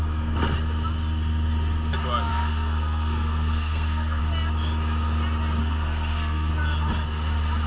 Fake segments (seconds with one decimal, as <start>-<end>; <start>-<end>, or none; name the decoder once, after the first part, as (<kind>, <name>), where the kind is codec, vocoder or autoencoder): 2.3-4.2 (codec, SNAC); 5.6-6.5